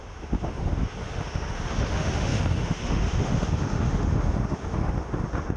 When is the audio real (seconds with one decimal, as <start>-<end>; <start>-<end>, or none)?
none